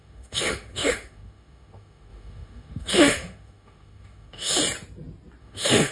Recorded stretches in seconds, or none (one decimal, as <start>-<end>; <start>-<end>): 4.6-5.4